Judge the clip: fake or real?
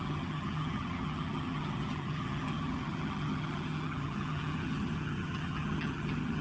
fake